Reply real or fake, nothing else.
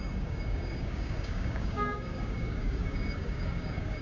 fake